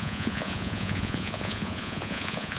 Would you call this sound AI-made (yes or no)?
yes